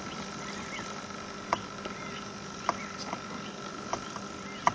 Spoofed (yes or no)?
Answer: no